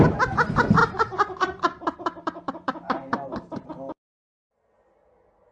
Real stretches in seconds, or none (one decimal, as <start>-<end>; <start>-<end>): 0.0-0.8; 3.7-5.5

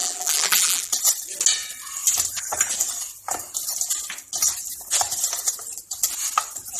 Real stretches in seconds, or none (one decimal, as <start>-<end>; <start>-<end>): 0.9-6.8